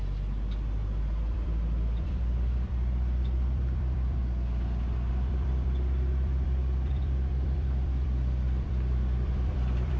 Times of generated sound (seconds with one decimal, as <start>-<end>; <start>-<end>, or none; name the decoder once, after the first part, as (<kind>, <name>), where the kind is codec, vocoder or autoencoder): 0.0-4.2 (vocoder, BigVGAN v2); 5.1-10.0